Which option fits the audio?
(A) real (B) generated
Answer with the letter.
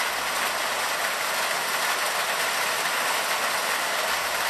A